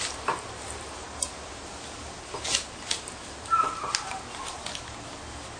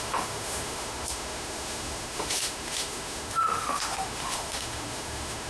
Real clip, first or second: first